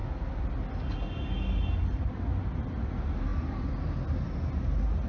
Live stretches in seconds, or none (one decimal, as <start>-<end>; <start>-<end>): 0.0-5.1